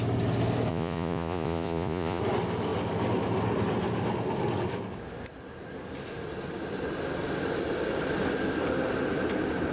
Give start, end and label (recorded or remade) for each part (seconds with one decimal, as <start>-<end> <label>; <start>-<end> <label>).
0.0-0.7 recorded; 0.7-2.2 remade; 2.2-9.7 recorded